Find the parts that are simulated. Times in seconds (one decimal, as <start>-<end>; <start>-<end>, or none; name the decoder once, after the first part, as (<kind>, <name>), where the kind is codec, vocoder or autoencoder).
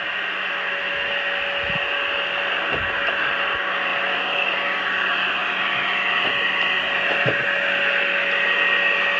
none